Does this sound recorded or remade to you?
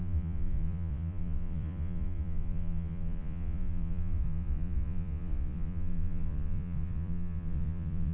remade